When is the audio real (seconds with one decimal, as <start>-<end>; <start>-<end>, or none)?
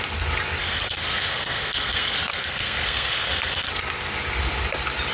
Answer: 0.0-0.6; 3.7-5.1